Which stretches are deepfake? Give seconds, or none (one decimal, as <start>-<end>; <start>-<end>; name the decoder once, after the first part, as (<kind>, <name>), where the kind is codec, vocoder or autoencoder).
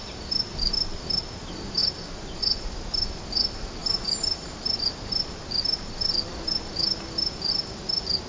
none